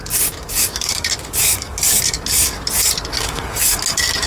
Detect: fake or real fake